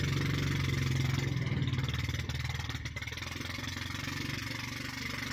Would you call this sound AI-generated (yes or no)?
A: no